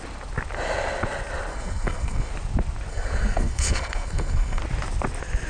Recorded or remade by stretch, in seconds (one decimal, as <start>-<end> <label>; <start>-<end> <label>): 0.0-1.5 recorded; 1.5-2.3 remade; 2.3-2.9 recorded; 2.9-4.6 remade; 4.6-5.5 recorded